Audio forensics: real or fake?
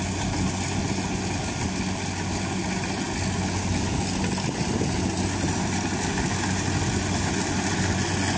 real